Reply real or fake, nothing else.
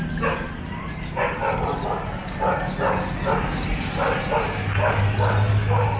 real